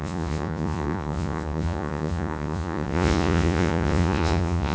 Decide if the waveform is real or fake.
fake